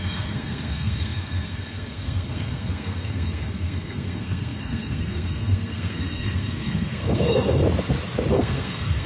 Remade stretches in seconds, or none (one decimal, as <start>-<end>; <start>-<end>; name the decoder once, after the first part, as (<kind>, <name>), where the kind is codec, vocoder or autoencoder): 0.0-7.6 (codec, SNAC); 8.3-9.1